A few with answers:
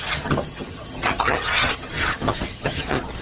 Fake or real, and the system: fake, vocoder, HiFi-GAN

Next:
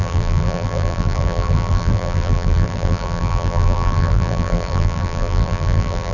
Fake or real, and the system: fake, vocoder, BigVGAN v2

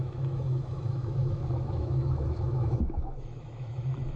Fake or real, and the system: fake, autoencoder, DAC-VAE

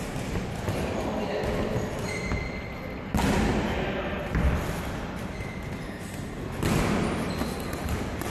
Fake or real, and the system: real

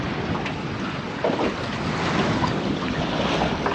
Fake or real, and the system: real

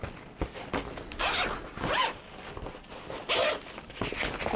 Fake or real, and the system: real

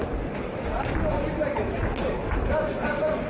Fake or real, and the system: real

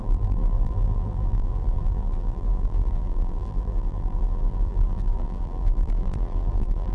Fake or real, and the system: fake, vocoder, BigVGAN v2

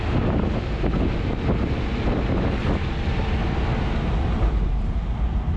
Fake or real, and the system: real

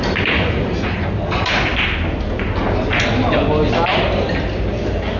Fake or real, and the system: real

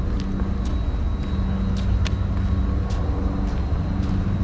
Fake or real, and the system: real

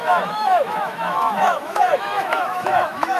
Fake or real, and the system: fake, autoencoder, DAC-VAE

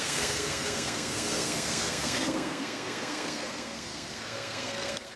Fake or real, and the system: fake, codec, SNAC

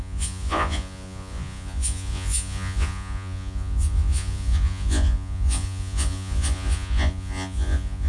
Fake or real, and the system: fake, vocoder, Vocos